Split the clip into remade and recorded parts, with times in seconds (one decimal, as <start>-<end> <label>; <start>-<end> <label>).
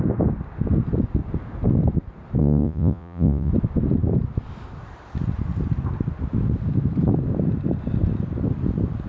0.0-2.4 recorded; 2.4-3.5 remade; 3.5-9.1 recorded